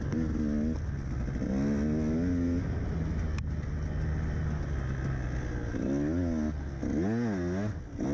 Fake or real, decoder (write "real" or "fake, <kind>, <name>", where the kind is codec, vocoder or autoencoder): real